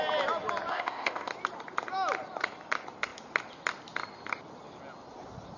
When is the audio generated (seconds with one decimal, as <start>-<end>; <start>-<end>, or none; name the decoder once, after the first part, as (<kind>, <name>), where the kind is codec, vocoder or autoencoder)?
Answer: 0.7-1.3 (codec, ZipCodec)